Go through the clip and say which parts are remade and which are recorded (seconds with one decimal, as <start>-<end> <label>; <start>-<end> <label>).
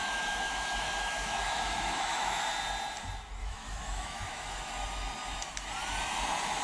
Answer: 0.0-2.4 remade; 2.4-3.4 recorded; 3.4-4.7 remade; 4.7-6.6 recorded